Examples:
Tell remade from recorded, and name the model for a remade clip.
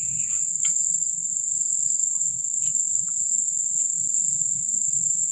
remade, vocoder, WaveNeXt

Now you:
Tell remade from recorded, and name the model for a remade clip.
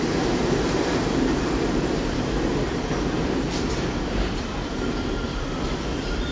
remade, vocoder, BigVGAN v2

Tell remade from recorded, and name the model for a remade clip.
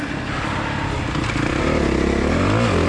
recorded